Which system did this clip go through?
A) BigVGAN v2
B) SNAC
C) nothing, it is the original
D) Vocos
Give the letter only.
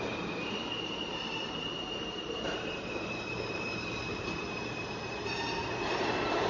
A